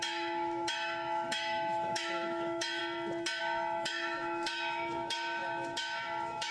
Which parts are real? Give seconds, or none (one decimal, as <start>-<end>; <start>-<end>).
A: 2.8-3.4